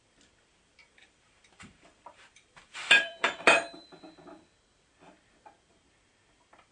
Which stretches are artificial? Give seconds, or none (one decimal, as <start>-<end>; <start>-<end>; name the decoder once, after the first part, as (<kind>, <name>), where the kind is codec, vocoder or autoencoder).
0.8-4.0 (vocoder, BigVGAN v2)